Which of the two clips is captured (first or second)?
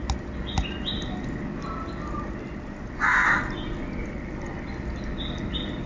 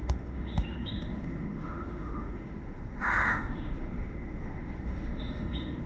first